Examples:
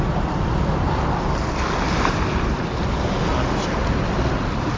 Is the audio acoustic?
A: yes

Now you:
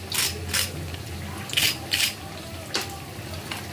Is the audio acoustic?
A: yes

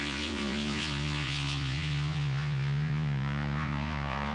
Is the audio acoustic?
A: no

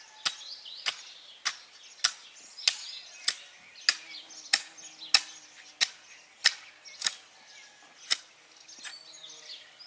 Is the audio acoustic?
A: yes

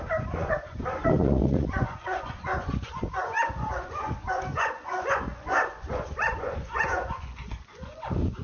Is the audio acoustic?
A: no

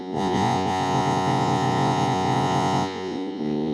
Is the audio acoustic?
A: no